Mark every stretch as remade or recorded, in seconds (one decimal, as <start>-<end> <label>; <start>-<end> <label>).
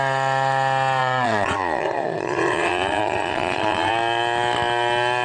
0.0-1.0 recorded; 1.0-3.9 remade; 3.9-5.2 recorded